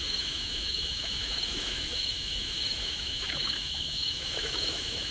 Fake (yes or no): yes